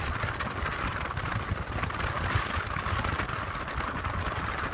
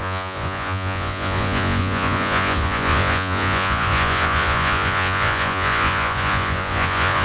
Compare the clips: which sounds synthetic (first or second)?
second